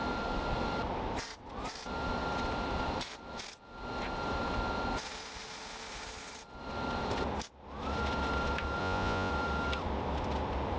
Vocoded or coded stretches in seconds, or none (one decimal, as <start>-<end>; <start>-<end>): 8.8-9.3